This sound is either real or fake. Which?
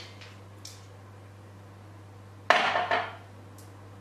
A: real